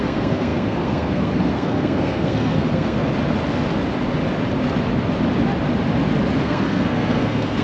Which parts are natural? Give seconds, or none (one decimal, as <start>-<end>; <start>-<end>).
3.1-6.4